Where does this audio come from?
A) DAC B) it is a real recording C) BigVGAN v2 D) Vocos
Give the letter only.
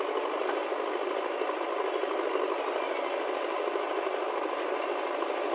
B